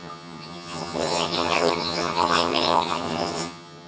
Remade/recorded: remade